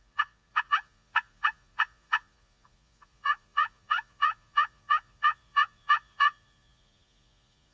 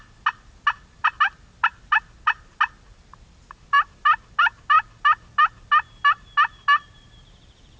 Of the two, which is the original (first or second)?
second